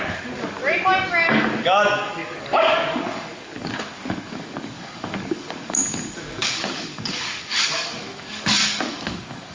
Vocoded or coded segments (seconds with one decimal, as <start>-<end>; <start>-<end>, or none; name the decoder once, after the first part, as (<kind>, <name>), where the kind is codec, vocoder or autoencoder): 0.0-0.6 (codec, DAC); 1.1-9.5